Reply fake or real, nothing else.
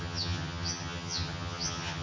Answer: fake